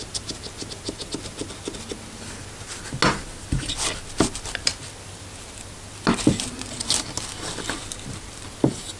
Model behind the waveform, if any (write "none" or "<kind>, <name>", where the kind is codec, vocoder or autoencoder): none